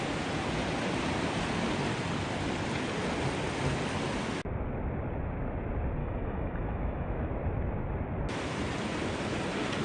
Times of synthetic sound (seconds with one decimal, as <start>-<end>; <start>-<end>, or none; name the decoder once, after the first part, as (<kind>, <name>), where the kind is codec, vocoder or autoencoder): 6.0-7.3 (autoencoder, DAC-VAE)